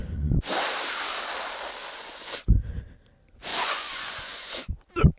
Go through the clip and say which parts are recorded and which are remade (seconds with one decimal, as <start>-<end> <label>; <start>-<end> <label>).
0.0-0.5 remade; 0.5-1.8 recorded; 1.8-2.5 remade; 2.5-3.5 recorded; 3.5-4.7 remade; 4.7-5.2 recorded